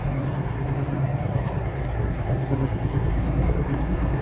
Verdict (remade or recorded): remade